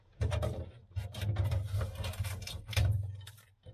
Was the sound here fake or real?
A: fake